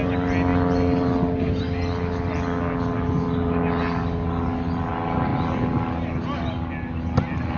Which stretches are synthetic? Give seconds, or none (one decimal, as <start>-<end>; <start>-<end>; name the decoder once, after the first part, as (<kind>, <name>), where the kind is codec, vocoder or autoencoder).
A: none